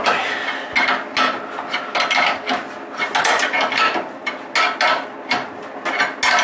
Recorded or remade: recorded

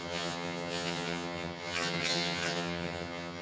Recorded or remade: remade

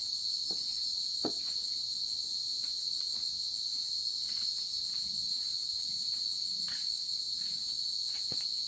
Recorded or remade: remade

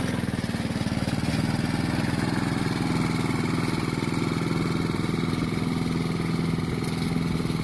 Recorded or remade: recorded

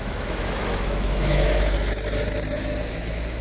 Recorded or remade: remade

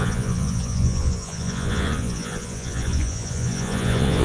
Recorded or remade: remade